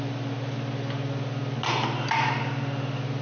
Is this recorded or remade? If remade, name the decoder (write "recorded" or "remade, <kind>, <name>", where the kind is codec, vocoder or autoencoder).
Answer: recorded